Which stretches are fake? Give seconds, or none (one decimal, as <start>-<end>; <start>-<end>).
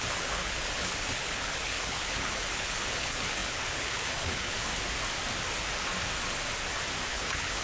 0.0-4.7; 7.1-7.6